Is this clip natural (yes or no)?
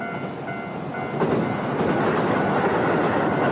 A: yes